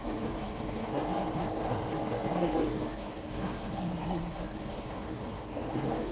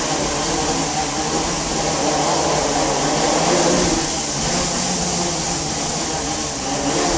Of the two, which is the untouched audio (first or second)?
second